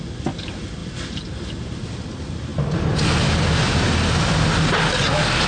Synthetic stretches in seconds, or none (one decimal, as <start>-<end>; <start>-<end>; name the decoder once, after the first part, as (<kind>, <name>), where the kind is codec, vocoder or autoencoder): none